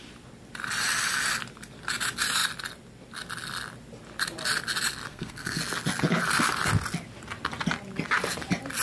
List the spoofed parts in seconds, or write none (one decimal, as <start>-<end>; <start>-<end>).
5.1-5.6